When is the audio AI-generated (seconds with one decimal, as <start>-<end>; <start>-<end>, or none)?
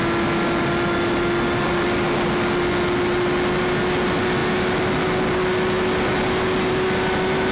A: none